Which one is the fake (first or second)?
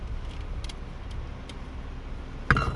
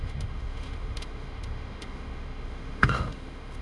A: second